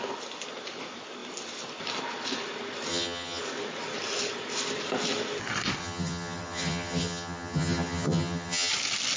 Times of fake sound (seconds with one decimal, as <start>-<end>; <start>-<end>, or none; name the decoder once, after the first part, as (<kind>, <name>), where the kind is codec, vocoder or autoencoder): 2.9-3.4 (vocoder, HiFi-GAN); 5.8-8.7